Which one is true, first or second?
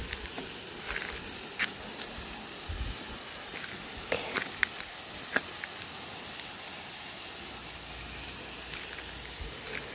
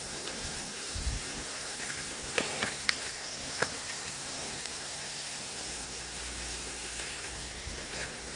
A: first